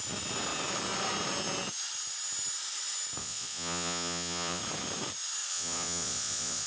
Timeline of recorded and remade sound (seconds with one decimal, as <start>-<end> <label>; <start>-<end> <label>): 0.0-3.2 recorded; 3.2-4.6 remade; 4.6-5.5 recorded; 5.5-6.7 remade